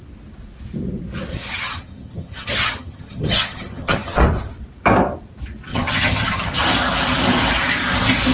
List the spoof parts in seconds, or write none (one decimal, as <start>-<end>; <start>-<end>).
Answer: 1.3-4.2; 5.7-6.5